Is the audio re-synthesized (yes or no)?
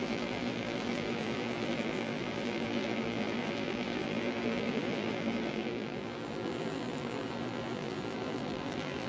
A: yes